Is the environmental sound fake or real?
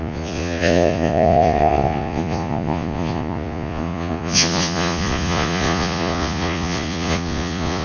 fake